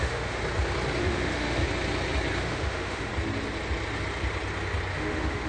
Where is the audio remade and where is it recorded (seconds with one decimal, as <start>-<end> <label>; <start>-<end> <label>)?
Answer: 0.0-0.4 remade; 0.4-1.0 recorded; 1.0-1.6 remade; 1.6-2.4 recorded; 2.4-3.1 remade; 3.1-4.9 recorded; 4.9-5.5 remade